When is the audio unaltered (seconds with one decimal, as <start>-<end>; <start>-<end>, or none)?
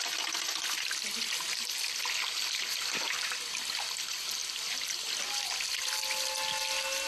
0.0-7.1